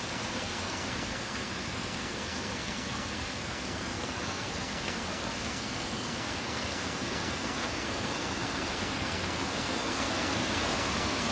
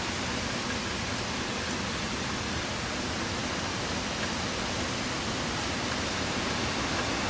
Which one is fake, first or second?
first